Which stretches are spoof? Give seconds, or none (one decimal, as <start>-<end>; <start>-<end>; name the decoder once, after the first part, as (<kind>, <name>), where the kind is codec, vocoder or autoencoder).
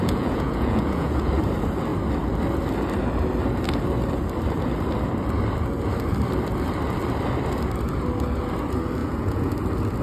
0.0-1.3 (vocoder, Vocos); 9.0-9.5